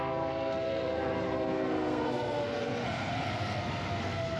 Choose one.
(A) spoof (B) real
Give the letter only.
A